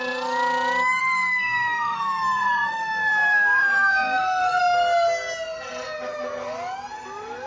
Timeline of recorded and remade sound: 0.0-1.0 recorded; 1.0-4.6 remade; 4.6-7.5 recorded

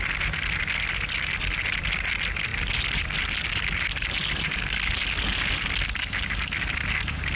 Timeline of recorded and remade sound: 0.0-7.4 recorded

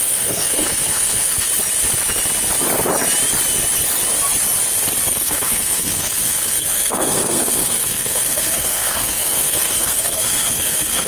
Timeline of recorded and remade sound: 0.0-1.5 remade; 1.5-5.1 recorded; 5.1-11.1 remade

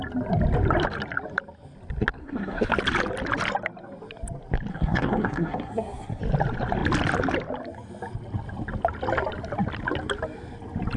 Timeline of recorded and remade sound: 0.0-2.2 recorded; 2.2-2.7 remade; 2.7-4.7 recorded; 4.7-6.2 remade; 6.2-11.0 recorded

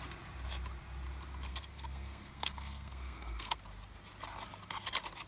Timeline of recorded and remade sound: 0.0-1.5 recorded; 1.5-3.6 remade; 3.6-5.3 recorded

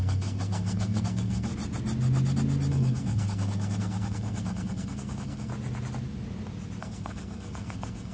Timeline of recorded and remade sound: 0.0-1.5 remade; 1.5-2.7 recorded; 2.7-5.5 remade; 5.5-6.8 recorded; 6.8-8.1 remade